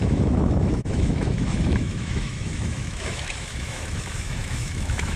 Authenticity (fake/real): fake